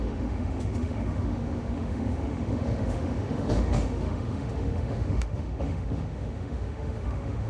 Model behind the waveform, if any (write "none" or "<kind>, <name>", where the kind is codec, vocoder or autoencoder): autoencoder, DAC-VAE